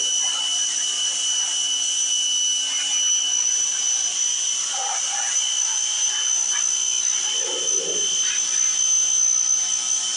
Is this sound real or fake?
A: real